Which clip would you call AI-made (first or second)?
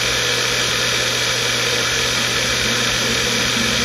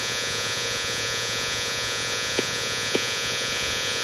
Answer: second